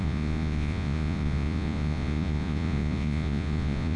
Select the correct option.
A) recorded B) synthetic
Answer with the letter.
B